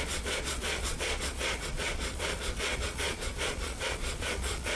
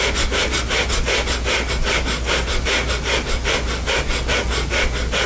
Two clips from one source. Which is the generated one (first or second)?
first